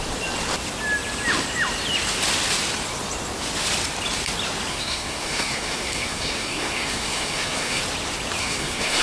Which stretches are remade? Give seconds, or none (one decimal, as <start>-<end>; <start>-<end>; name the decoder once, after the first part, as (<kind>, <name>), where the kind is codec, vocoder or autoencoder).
4.7-7.8 (codec, SNAC); 8.4-9.0